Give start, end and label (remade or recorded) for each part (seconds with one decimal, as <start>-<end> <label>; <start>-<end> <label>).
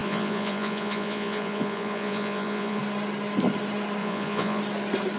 0.0-2.8 remade; 2.8-4.0 recorded; 4.0-4.6 remade; 4.6-5.2 recorded